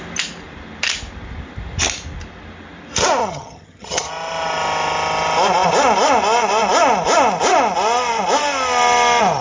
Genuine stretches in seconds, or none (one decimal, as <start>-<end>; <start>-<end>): 0.0-3.2; 4.1-9.4